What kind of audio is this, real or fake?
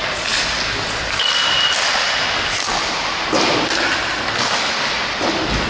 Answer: real